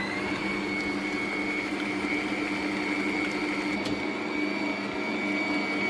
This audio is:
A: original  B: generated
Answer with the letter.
A